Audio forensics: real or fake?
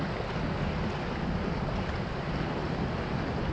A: real